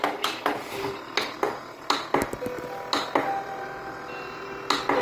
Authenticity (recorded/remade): recorded